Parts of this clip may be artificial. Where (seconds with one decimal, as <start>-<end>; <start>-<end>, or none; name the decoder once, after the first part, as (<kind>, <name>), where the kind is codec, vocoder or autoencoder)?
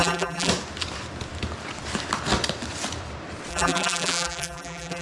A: 0.0-0.5 (vocoder, BigVGAN v2); 3.5-5.0